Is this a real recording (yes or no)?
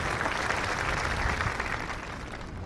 yes